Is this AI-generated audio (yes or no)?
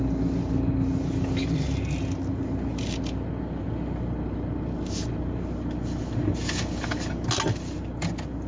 no